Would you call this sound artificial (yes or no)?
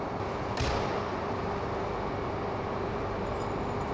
no